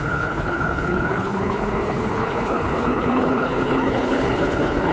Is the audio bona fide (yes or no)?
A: no